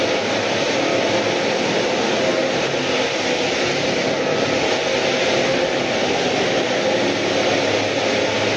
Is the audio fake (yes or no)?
no